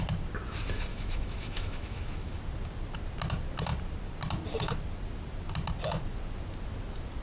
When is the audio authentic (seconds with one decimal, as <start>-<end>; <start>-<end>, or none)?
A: 0.0-0.9; 2.4-7.2